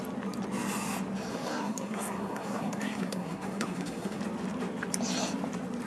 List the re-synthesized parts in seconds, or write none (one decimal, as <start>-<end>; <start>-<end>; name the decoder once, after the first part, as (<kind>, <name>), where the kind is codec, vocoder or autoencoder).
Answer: 1.3-4.2 (codec, SNAC)